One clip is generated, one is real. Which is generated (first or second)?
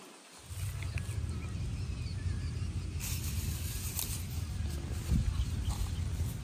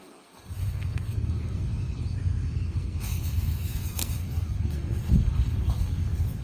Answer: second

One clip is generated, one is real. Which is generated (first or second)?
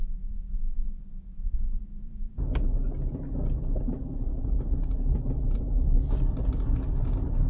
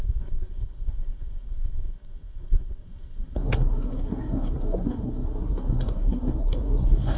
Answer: second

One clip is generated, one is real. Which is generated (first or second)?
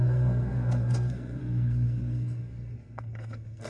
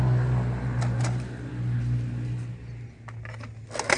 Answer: first